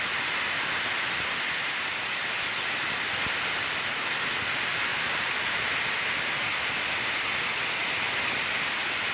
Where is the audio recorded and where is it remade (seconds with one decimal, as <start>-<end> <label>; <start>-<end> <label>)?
0.0-4.9 recorded; 4.9-5.7 remade; 5.7-9.1 recorded